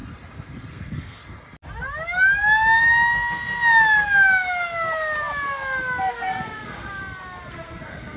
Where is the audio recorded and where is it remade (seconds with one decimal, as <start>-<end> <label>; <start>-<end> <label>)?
0.0-0.7 recorded; 0.7-1.2 remade; 1.2-6.1 recorded; 6.1-7.0 remade; 7.0-7.5 recorded; 7.5-8.2 remade